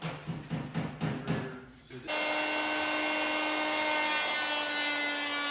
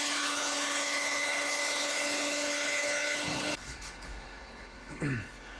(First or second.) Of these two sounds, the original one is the first